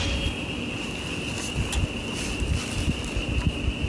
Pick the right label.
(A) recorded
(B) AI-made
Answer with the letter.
A